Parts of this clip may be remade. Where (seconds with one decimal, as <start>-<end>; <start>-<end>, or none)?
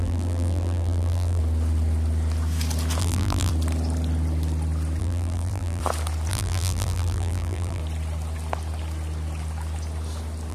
0.0-1.4; 3.0-3.5; 5.0-5.8; 6.3-7.8